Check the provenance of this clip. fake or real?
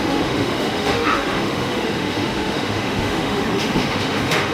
fake